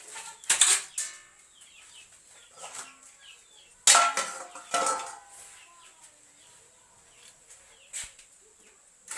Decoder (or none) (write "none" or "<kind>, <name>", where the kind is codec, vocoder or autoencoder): none